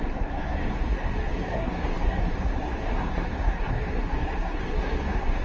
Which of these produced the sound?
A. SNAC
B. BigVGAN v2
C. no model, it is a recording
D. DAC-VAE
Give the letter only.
A